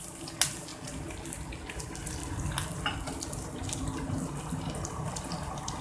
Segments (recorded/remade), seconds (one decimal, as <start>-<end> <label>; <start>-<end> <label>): 0.0-5.8 recorded